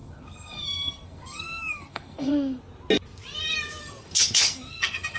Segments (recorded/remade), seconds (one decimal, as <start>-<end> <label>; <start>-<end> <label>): 0.0-2.3 remade; 2.3-3.8 recorded; 3.8-5.2 remade